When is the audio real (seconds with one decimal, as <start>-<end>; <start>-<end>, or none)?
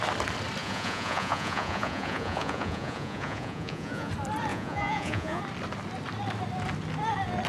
0.0-0.6; 4.1-4.5; 5.4-7.5